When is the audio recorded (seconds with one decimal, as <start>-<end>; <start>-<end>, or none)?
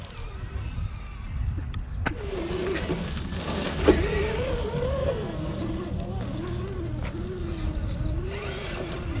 0.0-3.0; 3.8-5.0; 5.6-9.2